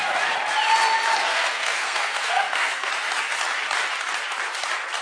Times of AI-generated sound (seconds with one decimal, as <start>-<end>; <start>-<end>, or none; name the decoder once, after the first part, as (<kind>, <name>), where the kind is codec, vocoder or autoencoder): 1.3-2.9 (codec, SNAC)